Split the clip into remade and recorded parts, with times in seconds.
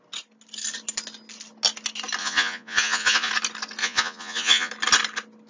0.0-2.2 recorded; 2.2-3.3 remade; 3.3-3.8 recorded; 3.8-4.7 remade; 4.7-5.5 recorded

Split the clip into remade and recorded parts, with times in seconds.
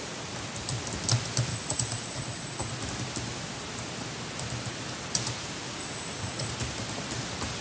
0.0-1.5 recorded; 1.5-2.7 remade; 2.7-5.8 recorded; 5.8-6.5 remade; 6.5-7.6 recorded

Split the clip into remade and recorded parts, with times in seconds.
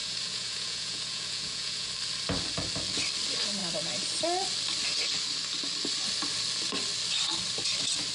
0.0-1.9 remade; 1.9-8.1 recorded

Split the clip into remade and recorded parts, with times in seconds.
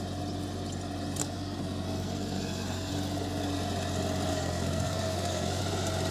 0.0-1.2 recorded; 1.2-2.9 remade; 2.9-4.3 recorded; 4.3-5.6 remade; 5.6-6.1 recorded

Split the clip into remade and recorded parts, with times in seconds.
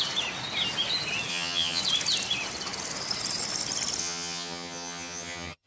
0.0-1.3 recorded; 1.3-1.8 remade; 1.8-4.0 recorded; 4.0-5.7 remade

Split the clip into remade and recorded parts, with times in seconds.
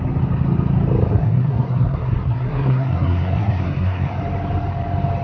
0.0-1.1 recorded; 1.1-4.2 remade; 4.2-5.2 recorded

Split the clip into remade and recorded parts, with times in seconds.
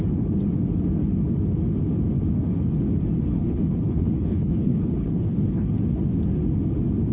0.0-3.3 recorded; 3.3-5.7 remade; 5.7-7.1 recorded